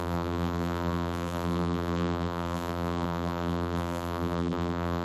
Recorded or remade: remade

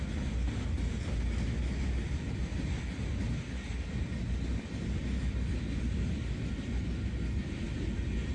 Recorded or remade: recorded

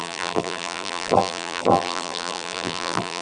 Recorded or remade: remade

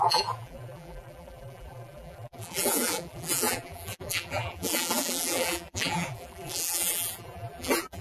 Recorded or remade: remade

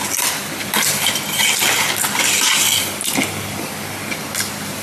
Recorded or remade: recorded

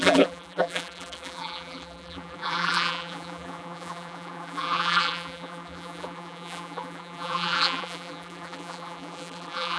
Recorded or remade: remade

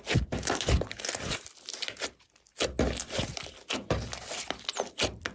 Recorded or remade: recorded